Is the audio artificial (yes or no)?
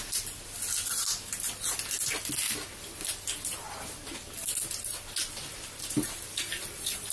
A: no